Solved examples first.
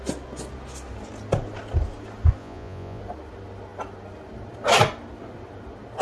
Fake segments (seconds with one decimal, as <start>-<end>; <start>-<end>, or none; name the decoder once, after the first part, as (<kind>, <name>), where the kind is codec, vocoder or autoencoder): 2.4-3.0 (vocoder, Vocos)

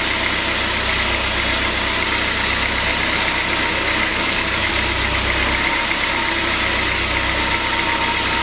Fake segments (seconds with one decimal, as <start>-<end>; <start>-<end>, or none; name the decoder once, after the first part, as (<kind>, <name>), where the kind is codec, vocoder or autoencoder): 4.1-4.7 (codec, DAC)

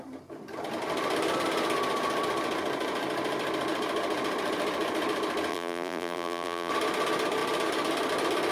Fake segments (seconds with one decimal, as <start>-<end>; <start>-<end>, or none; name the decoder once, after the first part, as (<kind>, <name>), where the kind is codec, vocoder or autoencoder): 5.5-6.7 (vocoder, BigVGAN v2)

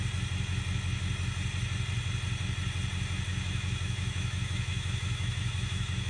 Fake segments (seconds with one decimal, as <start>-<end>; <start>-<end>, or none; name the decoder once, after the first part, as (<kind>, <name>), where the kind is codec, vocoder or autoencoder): 3.3-6.1 (autoencoder, DAC-VAE)